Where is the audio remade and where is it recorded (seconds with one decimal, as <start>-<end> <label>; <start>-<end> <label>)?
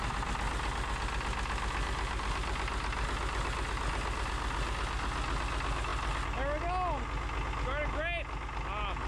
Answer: 0.0-9.1 recorded